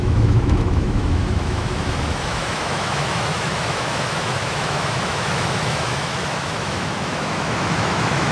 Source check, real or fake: fake